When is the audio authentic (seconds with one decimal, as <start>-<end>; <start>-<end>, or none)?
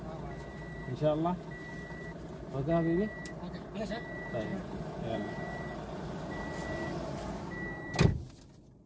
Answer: 0.0-8.9